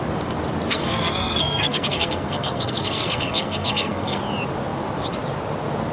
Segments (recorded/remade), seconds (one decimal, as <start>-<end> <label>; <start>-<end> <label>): 0.0-0.7 recorded; 0.7-4.2 remade; 4.2-5.9 recorded